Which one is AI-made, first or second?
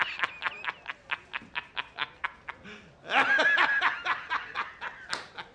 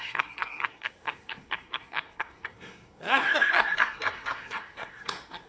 second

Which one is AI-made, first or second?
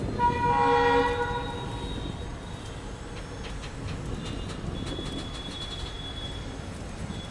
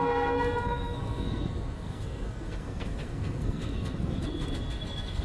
second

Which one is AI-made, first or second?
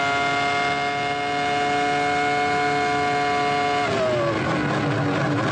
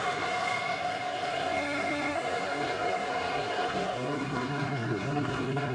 second